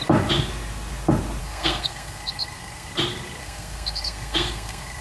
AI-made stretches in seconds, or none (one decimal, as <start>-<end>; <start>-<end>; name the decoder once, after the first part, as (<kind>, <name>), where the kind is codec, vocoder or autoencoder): 1.4-2.9 (codec, SNAC); 3.4-5.0